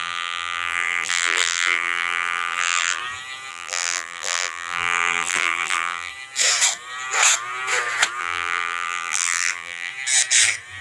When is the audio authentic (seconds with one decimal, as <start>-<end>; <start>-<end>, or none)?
3.0-3.5; 6.1-8.2; 9.9-10.8